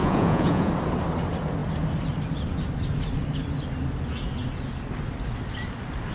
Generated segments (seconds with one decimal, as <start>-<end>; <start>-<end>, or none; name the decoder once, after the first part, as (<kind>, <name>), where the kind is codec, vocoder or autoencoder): 0.0-0.7 (vocoder, Vocos)